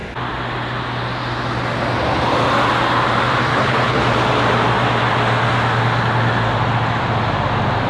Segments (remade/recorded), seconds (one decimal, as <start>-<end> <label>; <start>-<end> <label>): 0.0-3.5 recorded; 3.5-4.0 remade; 4.0-7.9 recorded